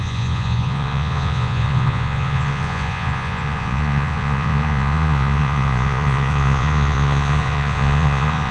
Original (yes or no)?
no